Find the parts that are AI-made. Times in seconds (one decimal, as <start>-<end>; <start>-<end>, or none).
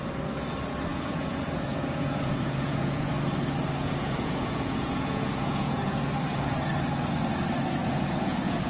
0.9-3.1; 3.8-6.0; 7.8-8.7